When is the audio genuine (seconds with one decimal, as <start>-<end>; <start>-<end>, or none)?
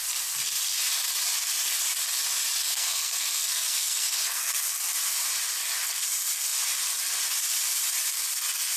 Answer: 0.0-2.6; 4.6-8.8